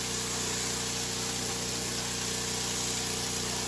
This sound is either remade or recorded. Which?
recorded